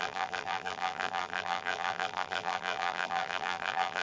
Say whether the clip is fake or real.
fake